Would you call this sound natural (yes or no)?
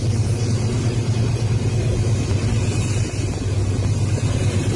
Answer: yes